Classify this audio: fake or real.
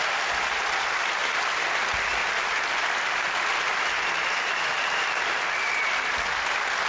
real